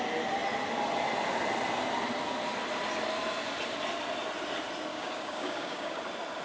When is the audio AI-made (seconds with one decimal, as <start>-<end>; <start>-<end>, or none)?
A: 4.9-6.0